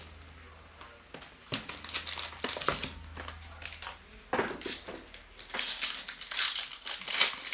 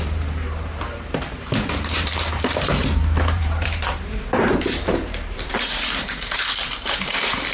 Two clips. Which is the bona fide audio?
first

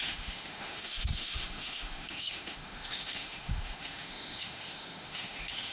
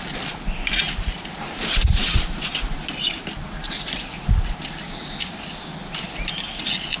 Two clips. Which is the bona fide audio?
second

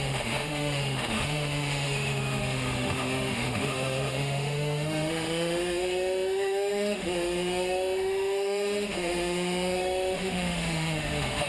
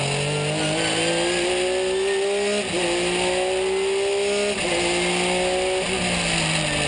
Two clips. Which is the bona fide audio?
second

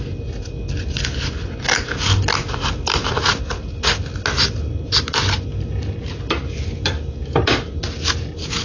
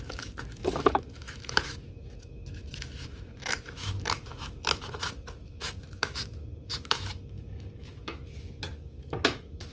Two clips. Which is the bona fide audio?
first